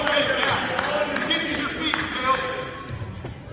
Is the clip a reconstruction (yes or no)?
no